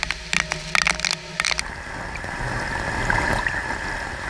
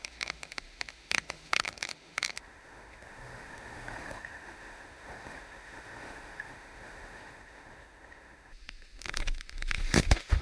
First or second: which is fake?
second